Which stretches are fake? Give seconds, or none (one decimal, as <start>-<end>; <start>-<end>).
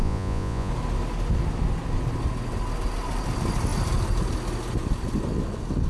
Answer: 0.0-0.7